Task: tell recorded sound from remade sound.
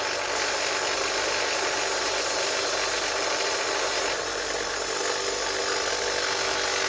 recorded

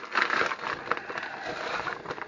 recorded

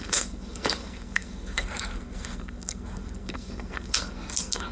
remade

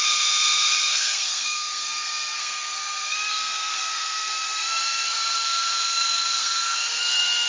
remade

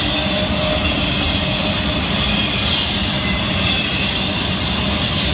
recorded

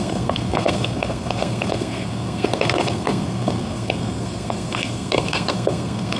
remade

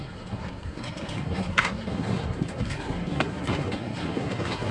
remade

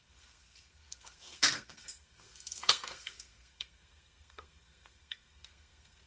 remade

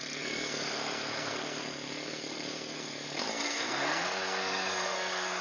remade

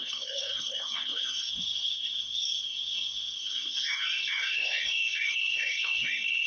remade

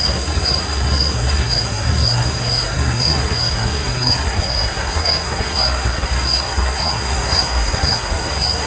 remade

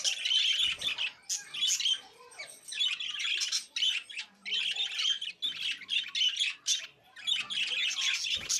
recorded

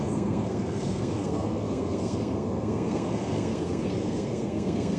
remade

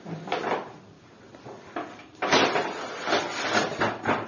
recorded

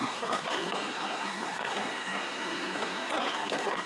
remade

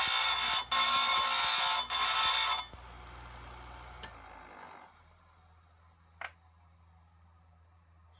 recorded